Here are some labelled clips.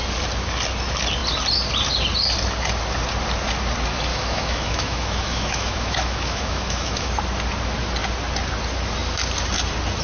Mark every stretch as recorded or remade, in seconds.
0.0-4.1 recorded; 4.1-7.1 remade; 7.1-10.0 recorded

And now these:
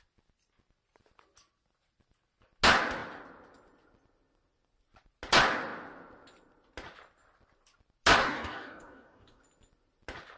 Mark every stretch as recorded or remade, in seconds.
0.0-8.2 recorded; 8.2-9.4 remade; 9.4-10.4 recorded

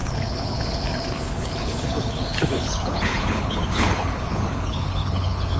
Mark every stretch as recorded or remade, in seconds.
0.0-5.6 remade

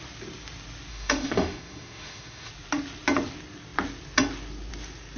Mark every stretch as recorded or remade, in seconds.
0.0-0.9 recorded; 0.9-2.5 remade; 2.5-5.2 recorded